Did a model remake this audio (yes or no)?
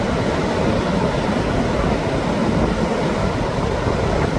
no